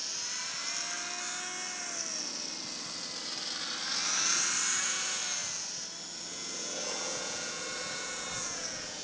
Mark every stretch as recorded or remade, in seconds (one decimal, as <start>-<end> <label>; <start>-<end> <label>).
0.0-4.8 recorded; 4.8-5.2 remade; 5.2-6.3 recorded; 6.3-9.0 remade